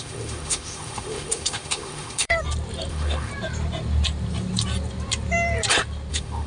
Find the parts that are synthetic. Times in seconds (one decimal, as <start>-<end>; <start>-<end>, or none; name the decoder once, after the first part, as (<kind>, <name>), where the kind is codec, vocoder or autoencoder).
0.0-2.3 (autoencoder, DAC-VAE); 2.9-3.3; 6.1-6.5

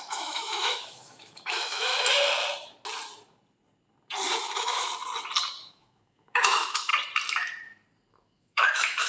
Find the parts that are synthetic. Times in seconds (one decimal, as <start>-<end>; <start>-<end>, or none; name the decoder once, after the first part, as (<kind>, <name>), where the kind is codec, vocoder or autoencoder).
0.0-1.9 (autoencoder, DAC-VAE); 4.4-4.9; 5.6-6.9; 8.1-9.1

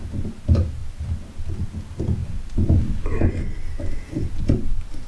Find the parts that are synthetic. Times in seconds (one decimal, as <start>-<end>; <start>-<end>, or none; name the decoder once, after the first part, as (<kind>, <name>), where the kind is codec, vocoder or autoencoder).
none

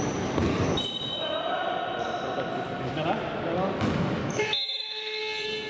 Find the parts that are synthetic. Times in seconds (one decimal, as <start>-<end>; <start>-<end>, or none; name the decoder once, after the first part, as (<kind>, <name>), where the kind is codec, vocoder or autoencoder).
4.2-5.2 (autoencoder, DAC-VAE)

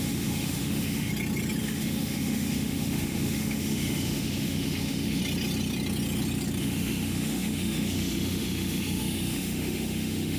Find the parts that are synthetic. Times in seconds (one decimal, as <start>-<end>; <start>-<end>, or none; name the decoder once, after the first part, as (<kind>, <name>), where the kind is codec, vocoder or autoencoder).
0.0-1.1 (autoencoder, DAC-VAE); 1.6-5.2; 6.6-10.4